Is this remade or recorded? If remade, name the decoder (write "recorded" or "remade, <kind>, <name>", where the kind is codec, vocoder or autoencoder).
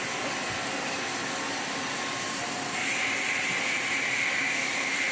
recorded